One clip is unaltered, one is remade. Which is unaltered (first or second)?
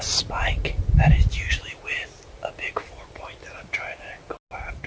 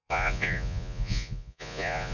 first